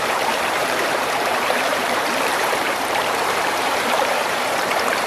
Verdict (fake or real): fake